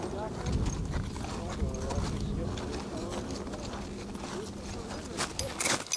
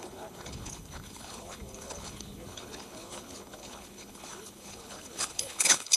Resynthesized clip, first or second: second